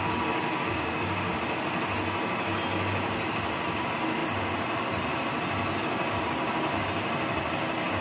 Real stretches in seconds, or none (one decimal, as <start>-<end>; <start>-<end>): 0.0-0.7; 1.3-8.0